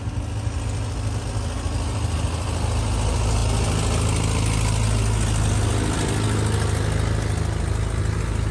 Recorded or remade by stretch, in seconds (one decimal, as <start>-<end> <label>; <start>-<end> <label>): 0.0-8.5 recorded